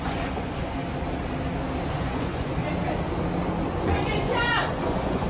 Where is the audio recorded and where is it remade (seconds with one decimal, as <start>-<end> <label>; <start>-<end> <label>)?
0.0-0.8 remade; 0.8-1.9 recorded; 1.9-2.6 remade; 2.6-3.8 recorded; 3.8-5.3 remade